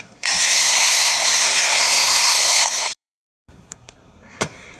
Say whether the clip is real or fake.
fake